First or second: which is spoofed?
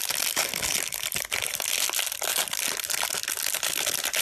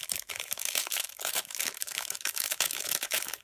second